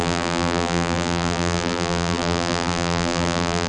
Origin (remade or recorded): remade